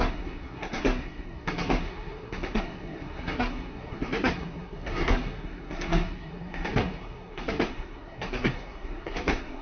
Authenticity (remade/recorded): remade